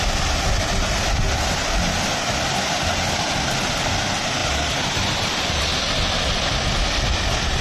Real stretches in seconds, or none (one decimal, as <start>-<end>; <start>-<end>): 0.0-4.4; 5.6-7.6